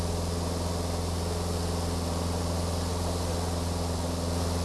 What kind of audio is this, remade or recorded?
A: recorded